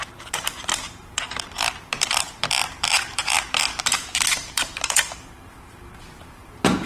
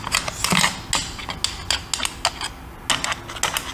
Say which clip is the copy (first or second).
first